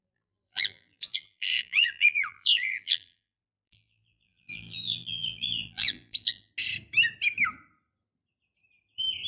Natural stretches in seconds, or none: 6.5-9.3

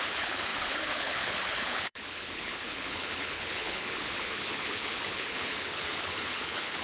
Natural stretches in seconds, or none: none

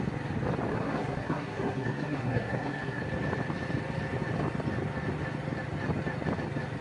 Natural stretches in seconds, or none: 0.0-0.7; 3.0-6.8